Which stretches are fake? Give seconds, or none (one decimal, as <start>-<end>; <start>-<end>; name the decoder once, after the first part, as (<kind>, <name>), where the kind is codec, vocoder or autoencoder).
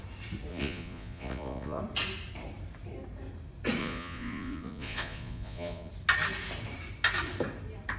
0.5-1.8 (vocoder, Vocos); 3.8-5.9